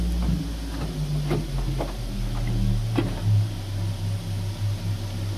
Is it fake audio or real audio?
real